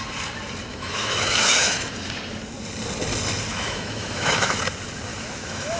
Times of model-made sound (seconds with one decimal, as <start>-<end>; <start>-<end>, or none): 0.7-1.9; 3.5-4.6; 5.1-5.8